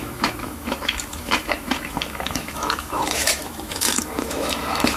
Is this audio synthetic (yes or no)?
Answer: yes